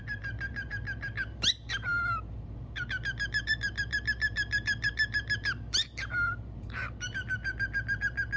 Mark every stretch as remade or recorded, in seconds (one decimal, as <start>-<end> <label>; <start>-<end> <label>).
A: 0.0-8.4 remade